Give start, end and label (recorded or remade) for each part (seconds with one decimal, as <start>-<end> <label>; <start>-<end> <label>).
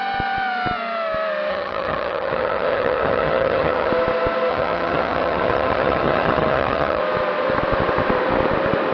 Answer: 0.0-1.5 recorded; 1.5-3.9 remade; 3.9-4.5 recorded; 4.5-7.0 remade; 7.0-8.9 recorded